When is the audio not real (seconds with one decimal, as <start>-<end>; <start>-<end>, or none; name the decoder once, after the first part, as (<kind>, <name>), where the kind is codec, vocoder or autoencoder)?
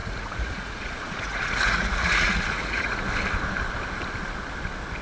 0.0-3.0 (vocoder, Vocos)